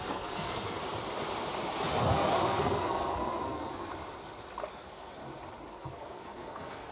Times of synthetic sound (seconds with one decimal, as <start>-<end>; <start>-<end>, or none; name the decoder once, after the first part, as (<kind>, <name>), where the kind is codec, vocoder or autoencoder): 0.0-0.8 (codec, SNAC); 1.9-3.9; 4.7-5.2; 5.7-6.9